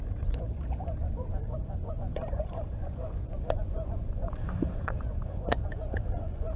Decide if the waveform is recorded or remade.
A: remade